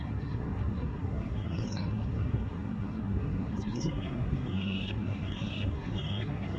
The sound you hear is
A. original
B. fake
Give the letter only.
B